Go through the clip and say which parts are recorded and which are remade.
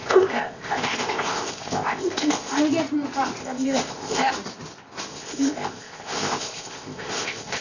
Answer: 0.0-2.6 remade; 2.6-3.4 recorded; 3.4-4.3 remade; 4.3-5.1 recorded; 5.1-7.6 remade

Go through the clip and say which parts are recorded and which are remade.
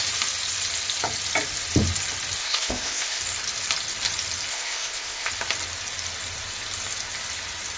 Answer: 0.0-2.4 recorded; 2.4-3.2 remade; 3.2-4.5 recorded; 4.5-5.3 remade; 5.3-7.8 recorded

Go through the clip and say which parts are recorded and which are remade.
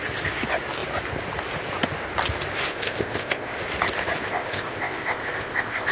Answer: 0.0-2.7 recorded; 2.7-3.6 remade; 3.6-4.3 recorded; 4.3-5.9 remade